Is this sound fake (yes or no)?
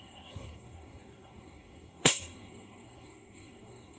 yes